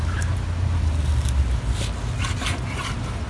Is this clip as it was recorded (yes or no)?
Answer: yes